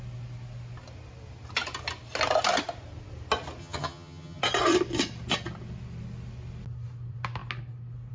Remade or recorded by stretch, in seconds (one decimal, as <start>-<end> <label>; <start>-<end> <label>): 0.0-3.6 recorded; 3.6-4.4 remade; 4.4-8.1 recorded